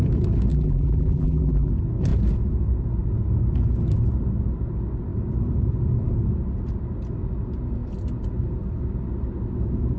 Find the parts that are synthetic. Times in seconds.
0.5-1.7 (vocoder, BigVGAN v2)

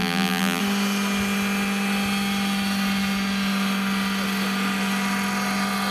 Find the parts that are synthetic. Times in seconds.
0.0-0.6 (vocoder, BigVGAN v2)

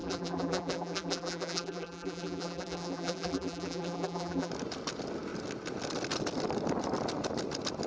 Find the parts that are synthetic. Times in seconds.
0.0-4.5 (vocoder, BigVGAN v2)

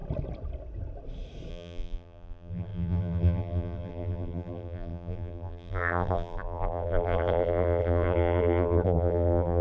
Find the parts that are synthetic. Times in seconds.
1.5-9.6 (vocoder, BigVGAN v2)

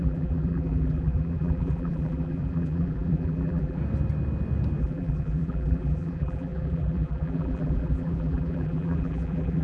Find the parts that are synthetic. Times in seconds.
0.0-3.8 (vocoder, BigVGAN v2); 4.8-9.6